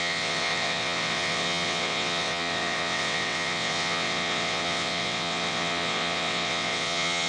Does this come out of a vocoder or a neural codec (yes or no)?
yes